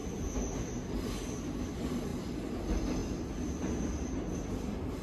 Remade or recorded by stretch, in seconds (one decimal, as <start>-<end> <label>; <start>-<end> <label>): 0.0-5.0 recorded